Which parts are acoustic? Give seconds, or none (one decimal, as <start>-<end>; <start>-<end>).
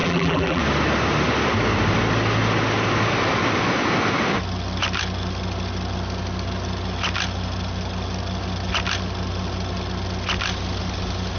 0.6-11.4